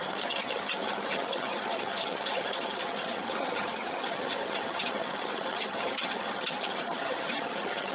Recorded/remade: remade